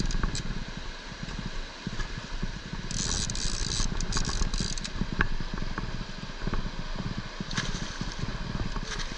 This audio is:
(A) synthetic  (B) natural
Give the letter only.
B